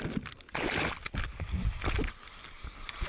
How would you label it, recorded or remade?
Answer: recorded